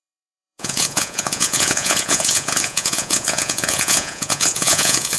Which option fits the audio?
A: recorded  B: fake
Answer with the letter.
B